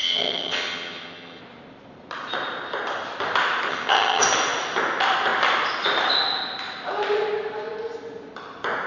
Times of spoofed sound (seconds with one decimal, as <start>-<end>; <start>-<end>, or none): 0.0-1.4; 3.7-4.2